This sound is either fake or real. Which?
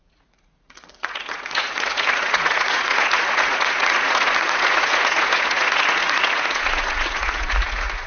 fake